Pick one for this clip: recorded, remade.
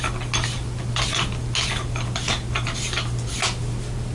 recorded